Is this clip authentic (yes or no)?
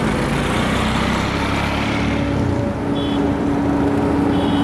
yes